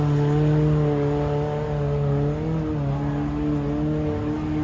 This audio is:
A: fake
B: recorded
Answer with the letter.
B